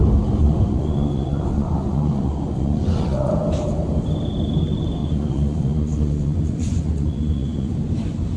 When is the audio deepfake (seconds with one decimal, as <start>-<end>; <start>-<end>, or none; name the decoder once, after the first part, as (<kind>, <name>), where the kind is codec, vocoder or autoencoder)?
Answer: 0.4-3.3 (vocoder, Vocos); 5.0-7.7